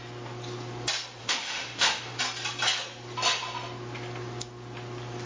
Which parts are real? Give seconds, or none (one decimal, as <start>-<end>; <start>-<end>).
0.0-1.2; 2.2-5.3